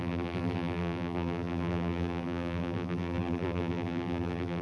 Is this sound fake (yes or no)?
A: yes